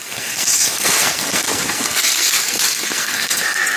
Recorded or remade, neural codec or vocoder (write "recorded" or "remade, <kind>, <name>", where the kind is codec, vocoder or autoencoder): remade, codec, SNAC